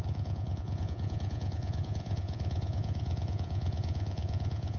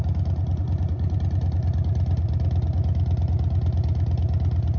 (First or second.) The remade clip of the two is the first